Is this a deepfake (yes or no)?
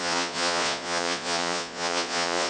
yes